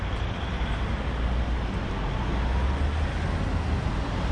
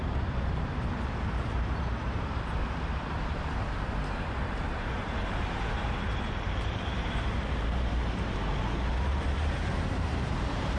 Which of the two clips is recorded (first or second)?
first